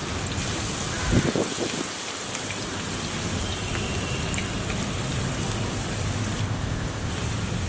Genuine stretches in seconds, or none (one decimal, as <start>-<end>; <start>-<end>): 0.0-6.4; 7.1-7.7